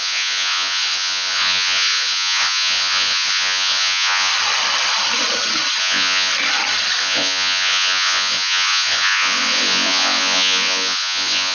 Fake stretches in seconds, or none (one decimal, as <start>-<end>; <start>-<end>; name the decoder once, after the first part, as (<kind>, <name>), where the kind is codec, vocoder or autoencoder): 0.0-4.3 (vocoder, Vocos); 5.8-6.3; 7.0-11.5